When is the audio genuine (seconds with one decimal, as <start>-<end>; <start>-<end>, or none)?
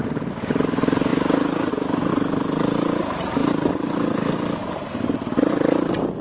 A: 0.0-6.2